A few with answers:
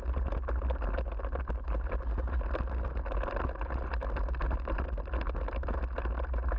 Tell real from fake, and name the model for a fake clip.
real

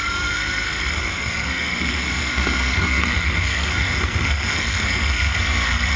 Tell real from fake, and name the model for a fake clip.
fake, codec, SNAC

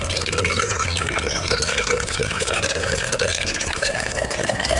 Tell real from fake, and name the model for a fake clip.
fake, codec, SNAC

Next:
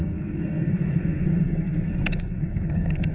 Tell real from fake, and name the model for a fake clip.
fake, codec, SNAC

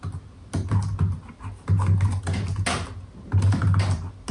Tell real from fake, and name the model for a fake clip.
real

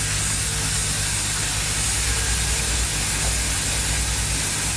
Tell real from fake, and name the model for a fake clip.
real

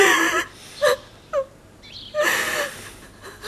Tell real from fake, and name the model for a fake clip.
real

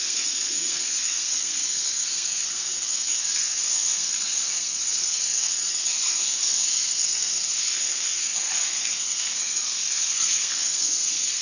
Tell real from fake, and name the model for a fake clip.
fake, codec, SNAC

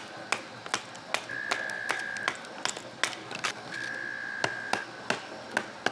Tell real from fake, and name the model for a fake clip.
real